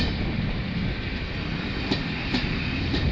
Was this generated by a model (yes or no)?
no